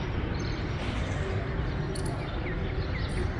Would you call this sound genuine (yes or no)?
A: yes